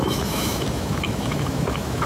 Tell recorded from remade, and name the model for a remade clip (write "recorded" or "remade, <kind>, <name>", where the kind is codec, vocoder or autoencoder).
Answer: remade, autoencoder, DAC-VAE